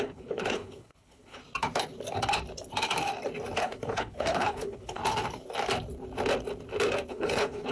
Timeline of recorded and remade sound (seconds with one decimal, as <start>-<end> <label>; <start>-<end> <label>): 0.0-1.4 remade; 1.4-3.6 recorded; 3.6-5.0 remade; 5.0-7.1 recorded; 7.1-7.7 remade